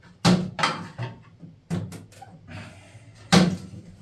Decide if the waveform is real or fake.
real